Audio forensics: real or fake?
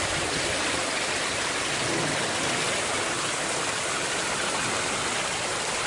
real